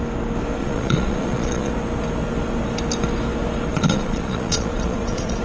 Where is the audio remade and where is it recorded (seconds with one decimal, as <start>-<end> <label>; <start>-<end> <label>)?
0.0-0.6 recorded; 0.6-1.7 remade; 1.7-3.7 recorded; 3.7-5.4 remade